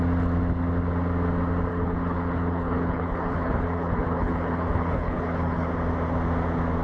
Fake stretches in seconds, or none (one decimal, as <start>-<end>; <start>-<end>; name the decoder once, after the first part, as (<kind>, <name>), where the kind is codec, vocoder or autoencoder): 1.7-5.7 (codec, HILCodec)